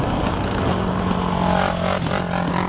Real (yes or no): yes